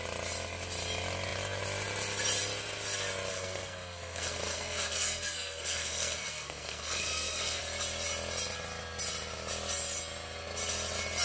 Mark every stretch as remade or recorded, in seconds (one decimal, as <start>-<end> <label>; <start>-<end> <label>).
0.0-3.3 recorded; 3.3-7.6 remade; 7.6-11.2 recorded